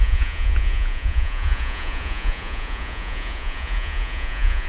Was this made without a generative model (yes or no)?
no